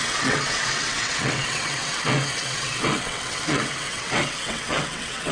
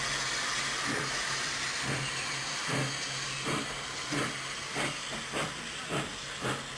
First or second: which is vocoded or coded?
first